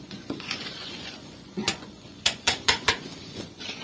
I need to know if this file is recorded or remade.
remade